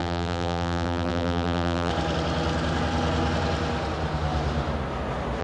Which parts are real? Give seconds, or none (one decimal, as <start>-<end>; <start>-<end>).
1.9-5.4